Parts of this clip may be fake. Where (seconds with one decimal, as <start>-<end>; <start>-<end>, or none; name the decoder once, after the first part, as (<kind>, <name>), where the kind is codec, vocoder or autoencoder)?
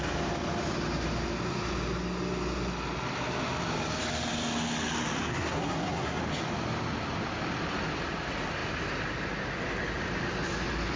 5.3-6.2 (codec, SNAC)